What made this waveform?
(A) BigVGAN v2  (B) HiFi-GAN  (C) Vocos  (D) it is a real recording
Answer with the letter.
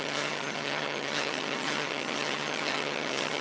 B